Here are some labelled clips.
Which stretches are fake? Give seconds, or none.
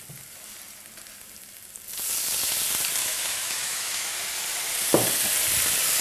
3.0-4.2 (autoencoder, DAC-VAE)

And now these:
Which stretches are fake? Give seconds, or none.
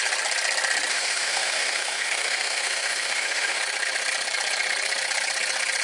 0.9-3.6 (autoencoder, DAC-VAE)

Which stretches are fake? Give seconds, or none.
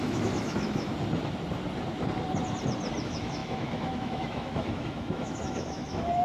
0.0-0.9 (autoencoder, DAC-VAE); 3.0-6.2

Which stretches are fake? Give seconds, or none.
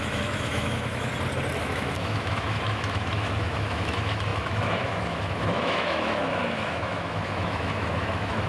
0.0-1.1 (autoencoder, DAC-VAE); 1.6-8.5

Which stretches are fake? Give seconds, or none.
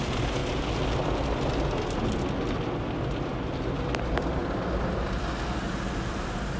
none